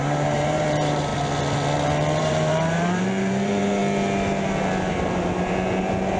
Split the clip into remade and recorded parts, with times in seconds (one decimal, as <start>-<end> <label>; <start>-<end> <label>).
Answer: 0.0-1.1 remade; 1.1-2.2 recorded; 2.2-3.8 remade; 3.8-6.2 recorded